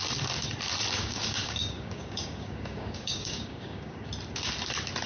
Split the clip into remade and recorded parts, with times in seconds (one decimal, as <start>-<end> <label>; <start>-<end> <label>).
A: 0.0-1.0 recorded; 1.0-4.1 remade; 4.1-5.1 recorded